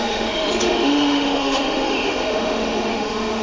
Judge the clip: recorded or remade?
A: remade